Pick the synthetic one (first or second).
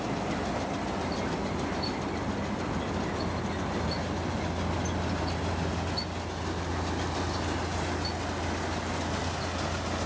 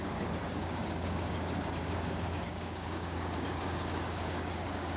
second